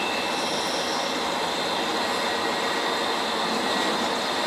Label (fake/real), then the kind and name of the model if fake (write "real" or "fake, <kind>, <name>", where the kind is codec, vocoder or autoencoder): real